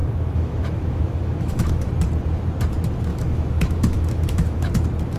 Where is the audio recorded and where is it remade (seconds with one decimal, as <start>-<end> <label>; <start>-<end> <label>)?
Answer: 0.0-1.9 remade; 1.9-3.1 recorded; 3.1-4.7 remade; 4.7-5.2 recorded

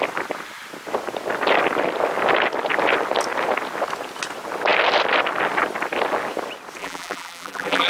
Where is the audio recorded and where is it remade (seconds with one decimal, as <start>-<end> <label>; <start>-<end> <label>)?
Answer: 0.0-6.8 recorded; 6.8-7.9 remade

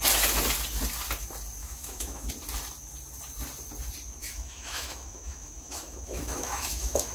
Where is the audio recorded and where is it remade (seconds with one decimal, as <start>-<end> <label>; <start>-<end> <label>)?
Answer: 0.0-1.6 recorded; 1.6-2.3 remade; 2.3-4.2 recorded; 4.2-7.1 remade

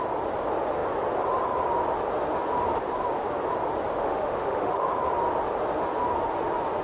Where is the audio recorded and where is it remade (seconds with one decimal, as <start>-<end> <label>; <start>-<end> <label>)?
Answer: 0.0-4.0 recorded; 4.0-4.9 remade; 4.9-6.8 recorded

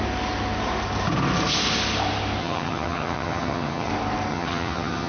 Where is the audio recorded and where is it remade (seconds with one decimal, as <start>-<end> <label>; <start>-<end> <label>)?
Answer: 0.0-2.4 recorded; 2.4-3.9 remade; 3.9-4.3 recorded; 4.3-5.1 remade